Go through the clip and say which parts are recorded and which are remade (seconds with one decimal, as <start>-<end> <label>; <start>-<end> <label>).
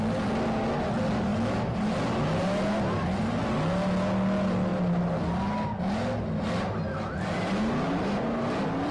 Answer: 0.0-8.9 recorded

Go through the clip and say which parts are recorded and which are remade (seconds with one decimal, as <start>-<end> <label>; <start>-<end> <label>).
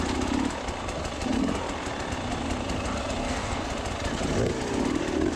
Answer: 0.0-3.2 recorded; 3.2-3.7 remade; 3.7-5.4 recorded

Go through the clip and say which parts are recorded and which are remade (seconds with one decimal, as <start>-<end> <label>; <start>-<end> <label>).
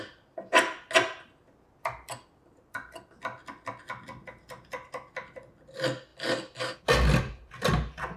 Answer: 0.0-8.2 recorded